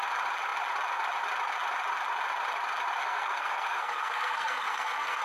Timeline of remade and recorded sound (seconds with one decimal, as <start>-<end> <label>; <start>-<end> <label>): 0.0-3.0 recorded; 3.0-5.2 remade